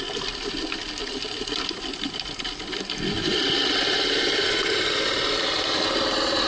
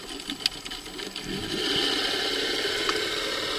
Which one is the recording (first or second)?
second